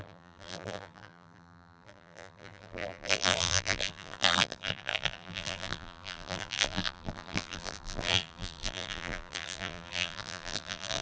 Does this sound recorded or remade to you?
remade